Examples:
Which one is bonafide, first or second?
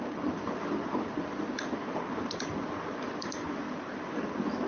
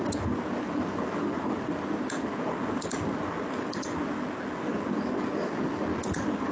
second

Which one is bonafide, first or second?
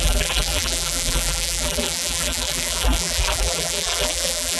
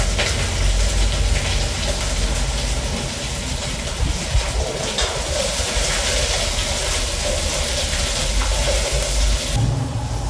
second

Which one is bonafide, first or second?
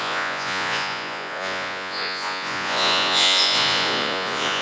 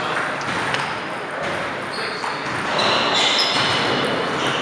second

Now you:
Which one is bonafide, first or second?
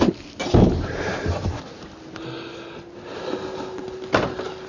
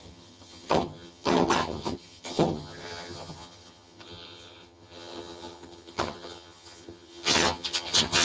first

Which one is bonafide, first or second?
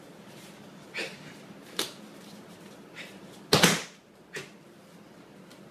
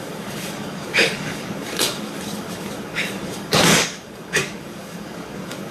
first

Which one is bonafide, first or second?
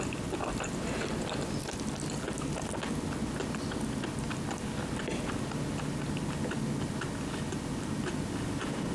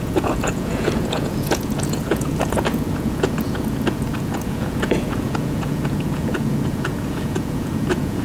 first